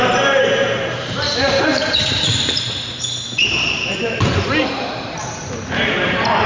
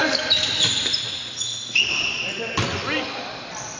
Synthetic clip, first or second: first